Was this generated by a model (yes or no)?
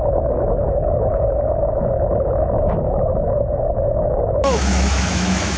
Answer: yes